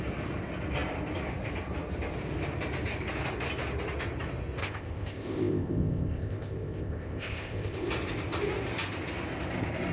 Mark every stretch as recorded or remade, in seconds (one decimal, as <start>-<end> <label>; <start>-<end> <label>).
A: 0.0-4.6 recorded; 4.6-7.9 remade; 7.9-9.9 recorded